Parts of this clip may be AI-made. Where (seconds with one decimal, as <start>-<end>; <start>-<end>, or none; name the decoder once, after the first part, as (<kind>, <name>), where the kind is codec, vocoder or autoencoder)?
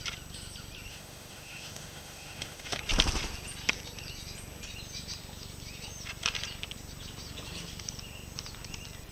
0.9-2.8 (autoencoder, DAC-VAE)